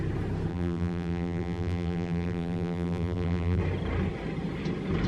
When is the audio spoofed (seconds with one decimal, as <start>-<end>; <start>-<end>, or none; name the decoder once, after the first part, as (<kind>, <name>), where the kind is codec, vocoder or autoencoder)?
0.5-3.6 (vocoder, BigVGAN v2)